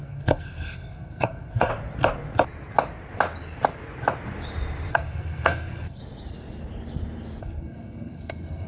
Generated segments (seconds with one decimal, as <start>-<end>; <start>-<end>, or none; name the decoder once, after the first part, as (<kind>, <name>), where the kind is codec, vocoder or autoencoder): 0.0-1.7 (codec, SNAC); 4.9-6.0; 7.4-8.7